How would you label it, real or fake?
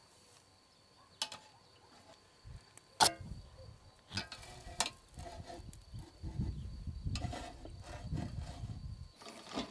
real